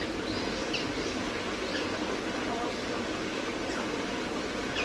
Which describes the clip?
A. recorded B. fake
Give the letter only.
A